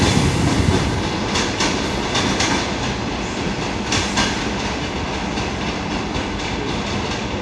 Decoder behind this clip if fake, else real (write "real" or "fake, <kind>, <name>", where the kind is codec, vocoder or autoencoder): real